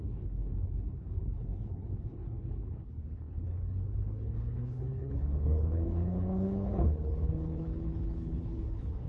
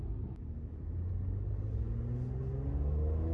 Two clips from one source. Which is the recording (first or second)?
second